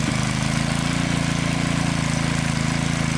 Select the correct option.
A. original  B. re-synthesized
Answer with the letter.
A